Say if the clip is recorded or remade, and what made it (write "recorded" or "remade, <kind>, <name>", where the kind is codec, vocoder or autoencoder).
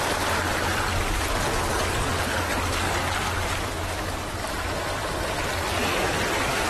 recorded